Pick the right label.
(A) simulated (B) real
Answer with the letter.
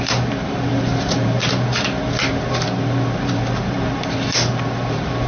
A